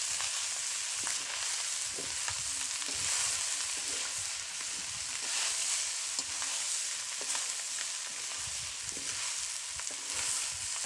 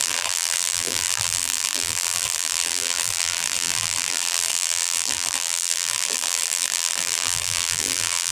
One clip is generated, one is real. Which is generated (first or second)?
second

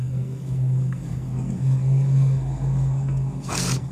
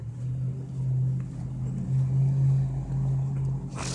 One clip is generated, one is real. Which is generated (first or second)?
first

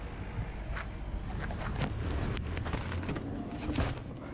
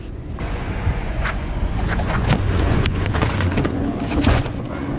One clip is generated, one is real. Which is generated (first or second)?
second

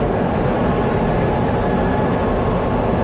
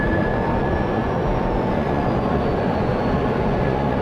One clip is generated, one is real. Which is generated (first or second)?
second